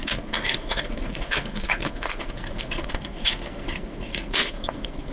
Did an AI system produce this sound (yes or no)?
yes